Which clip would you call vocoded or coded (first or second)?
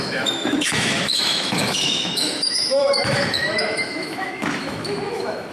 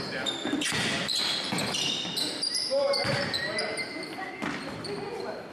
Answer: first